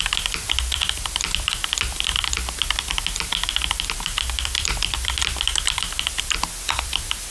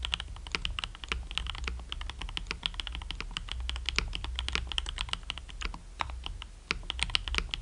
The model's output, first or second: first